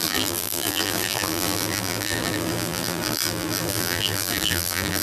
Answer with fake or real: fake